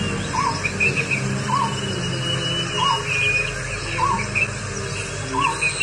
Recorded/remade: recorded